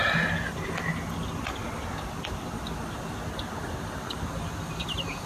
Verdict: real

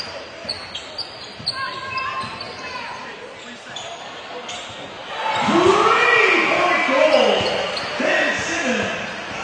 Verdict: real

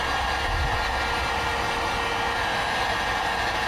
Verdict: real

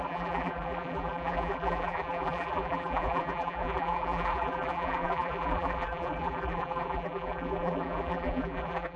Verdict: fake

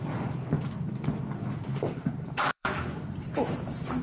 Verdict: fake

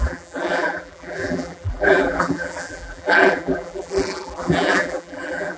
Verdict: fake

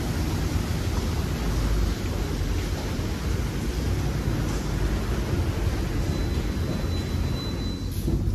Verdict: real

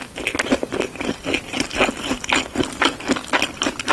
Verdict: real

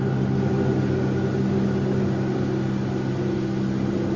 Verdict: real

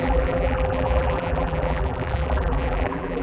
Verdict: fake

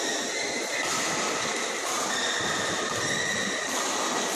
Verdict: real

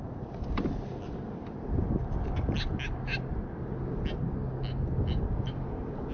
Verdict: real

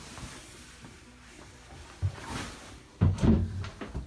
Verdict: fake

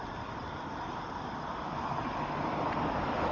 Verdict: real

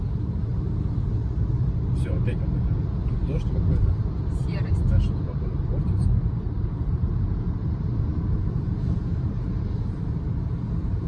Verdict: fake